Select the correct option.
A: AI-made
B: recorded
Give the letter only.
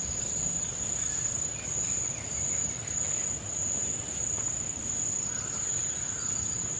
B